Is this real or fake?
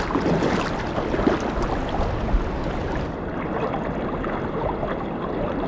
real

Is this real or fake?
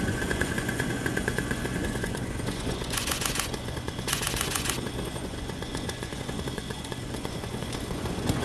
fake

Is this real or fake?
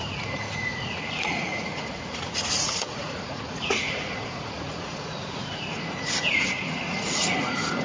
fake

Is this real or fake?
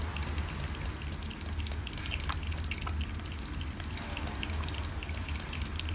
real